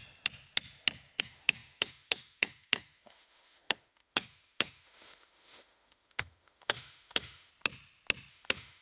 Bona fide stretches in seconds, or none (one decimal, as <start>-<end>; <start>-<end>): 0.0-1.2; 7.5-8.3